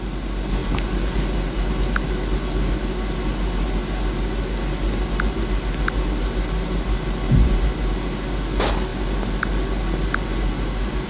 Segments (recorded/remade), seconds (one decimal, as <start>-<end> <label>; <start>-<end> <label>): 0.0-11.1 recorded